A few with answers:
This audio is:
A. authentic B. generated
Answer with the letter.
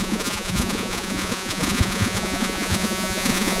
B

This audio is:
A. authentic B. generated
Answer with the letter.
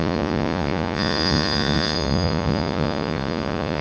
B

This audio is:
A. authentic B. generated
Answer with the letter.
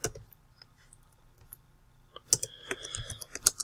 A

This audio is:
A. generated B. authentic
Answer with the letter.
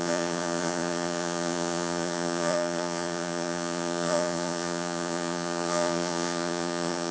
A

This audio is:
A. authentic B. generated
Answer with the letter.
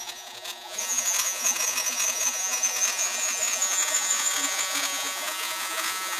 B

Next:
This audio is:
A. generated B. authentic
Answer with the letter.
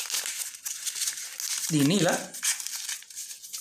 B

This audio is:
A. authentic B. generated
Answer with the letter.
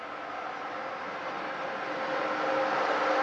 A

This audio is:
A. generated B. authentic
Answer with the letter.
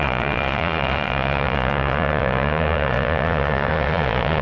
A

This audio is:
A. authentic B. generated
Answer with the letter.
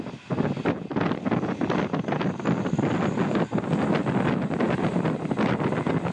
A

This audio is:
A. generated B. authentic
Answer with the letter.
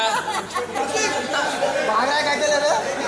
B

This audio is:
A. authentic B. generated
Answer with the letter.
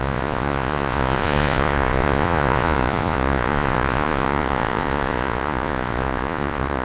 B